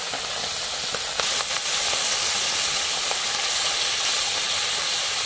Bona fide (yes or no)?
yes